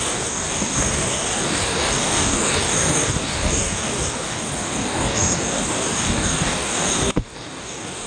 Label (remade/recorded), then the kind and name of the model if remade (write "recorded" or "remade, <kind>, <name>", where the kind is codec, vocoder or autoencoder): remade, codec, DAC